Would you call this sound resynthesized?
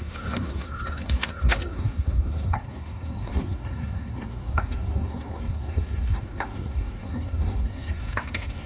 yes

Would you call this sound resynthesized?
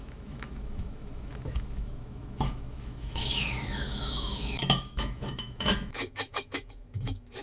yes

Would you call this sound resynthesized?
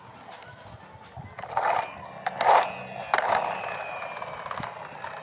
no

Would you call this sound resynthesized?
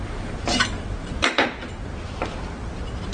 no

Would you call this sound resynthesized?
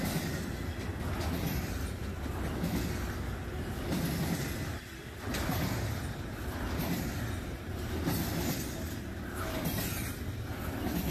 no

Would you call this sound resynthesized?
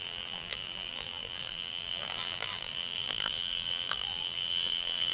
yes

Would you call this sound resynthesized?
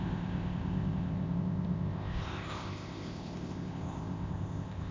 yes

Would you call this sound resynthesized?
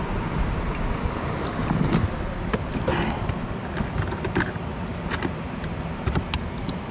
no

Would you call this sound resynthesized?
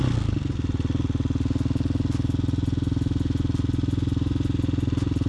no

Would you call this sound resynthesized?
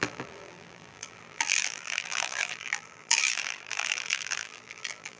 yes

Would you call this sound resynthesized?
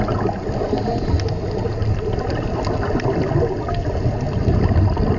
no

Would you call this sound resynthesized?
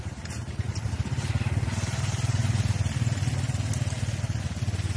no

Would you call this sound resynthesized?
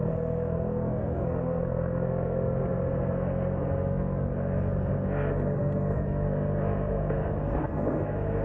yes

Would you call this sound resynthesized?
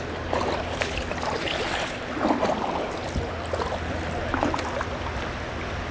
no